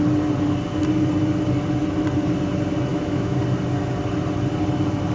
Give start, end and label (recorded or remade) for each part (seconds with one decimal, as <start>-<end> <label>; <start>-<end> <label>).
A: 0.0-2.9 recorded; 2.9-3.4 remade; 3.4-5.1 recorded